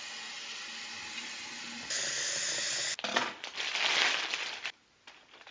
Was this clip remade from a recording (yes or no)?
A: no